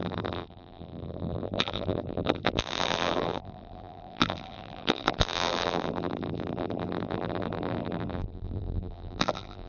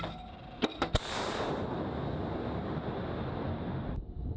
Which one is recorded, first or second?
second